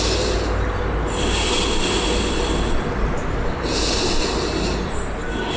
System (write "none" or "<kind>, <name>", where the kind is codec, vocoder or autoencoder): none